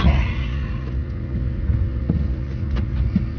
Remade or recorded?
remade